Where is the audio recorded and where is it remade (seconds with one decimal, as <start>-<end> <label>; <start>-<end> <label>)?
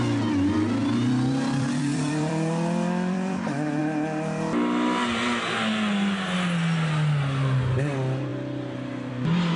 0.0-0.8 recorded; 0.8-3.8 remade; 3.8-9.6 recorded